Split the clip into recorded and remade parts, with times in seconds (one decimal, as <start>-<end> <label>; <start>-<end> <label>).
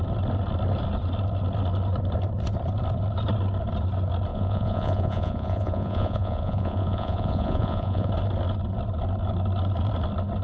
0.0-4.3 recorded; 4.3-8.1 remade; 8.1-10.4 recorded